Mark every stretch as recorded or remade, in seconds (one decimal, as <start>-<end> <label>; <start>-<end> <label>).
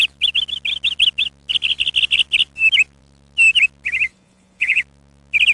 0.0-4.1 recorded; 4.1-4.8 remade; 4.8-5.5 recorded